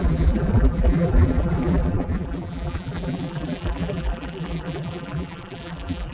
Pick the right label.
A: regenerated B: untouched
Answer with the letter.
A